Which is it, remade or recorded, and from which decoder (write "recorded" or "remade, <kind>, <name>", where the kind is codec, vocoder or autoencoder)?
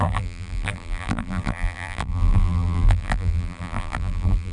remade, vocoder, BigVGAN v2